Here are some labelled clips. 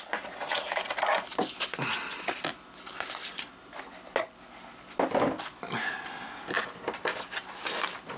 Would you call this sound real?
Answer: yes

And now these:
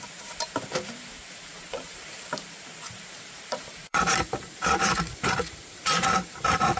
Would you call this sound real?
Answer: no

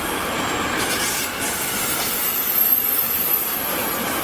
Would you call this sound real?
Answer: yes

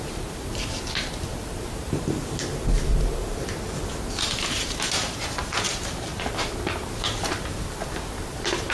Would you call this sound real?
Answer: no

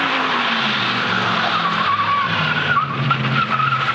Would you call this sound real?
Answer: no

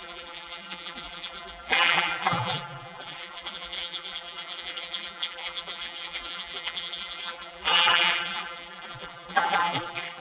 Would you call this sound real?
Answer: no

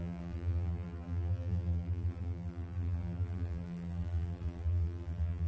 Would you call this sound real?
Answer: no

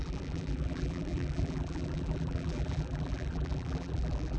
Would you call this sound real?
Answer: no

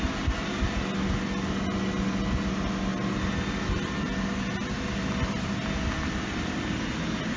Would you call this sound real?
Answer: yes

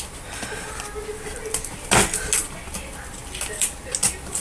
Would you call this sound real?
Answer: yes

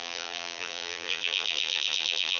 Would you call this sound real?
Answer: no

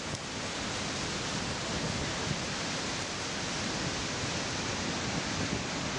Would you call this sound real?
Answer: yes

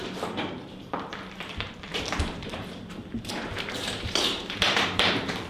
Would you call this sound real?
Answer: no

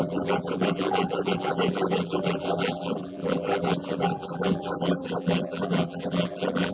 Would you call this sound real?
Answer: no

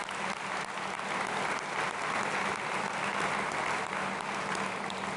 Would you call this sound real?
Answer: yes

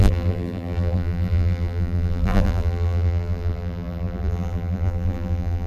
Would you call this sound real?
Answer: no